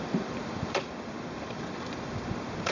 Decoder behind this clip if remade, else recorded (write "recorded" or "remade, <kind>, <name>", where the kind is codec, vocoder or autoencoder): remade, vocoder, BigVGAN v2